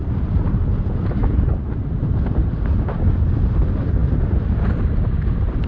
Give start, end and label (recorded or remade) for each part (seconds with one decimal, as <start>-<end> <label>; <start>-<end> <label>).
0.0-5.7 recorded